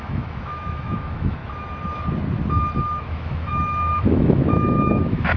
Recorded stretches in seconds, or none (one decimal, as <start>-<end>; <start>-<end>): 1.4-3.0